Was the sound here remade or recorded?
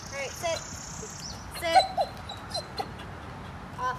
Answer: recorded